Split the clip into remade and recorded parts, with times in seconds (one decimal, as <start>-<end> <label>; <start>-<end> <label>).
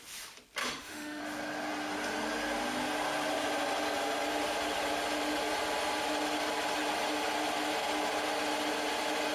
0.0-0.6 recorded; 0.6-1.2 remade; 1.2-9.3 recorded